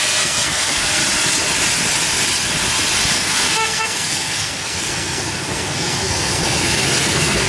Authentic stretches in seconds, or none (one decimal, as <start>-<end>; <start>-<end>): 1.0-3.1